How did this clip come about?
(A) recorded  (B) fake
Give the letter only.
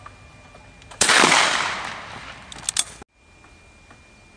A